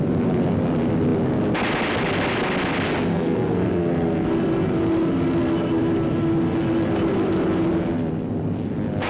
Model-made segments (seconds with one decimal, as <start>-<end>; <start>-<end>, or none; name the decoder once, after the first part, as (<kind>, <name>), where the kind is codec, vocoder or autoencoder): 3.1-4.3 (codec, SNAC)